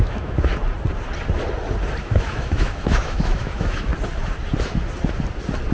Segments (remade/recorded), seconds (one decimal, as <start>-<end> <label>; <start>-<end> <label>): 0.0-0.5 remade; 0.5-2.0 recorded; 2.0-3.9 remade; 3.9-5.7 recorded